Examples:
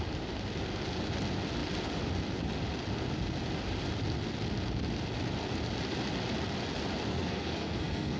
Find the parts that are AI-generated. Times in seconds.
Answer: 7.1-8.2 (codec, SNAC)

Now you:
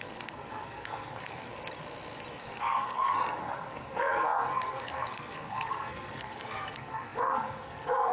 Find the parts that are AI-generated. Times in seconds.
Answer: 0.0-1.5 (codec, SNAC); 2.4-8.1

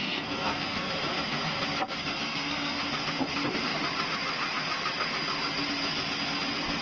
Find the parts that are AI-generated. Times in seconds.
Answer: 0.0-0.9 (codec, SNAC); 2.0-2.8

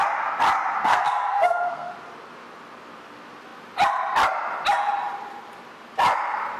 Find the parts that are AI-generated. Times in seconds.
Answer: 0.8-1.9 (codec, SNAC)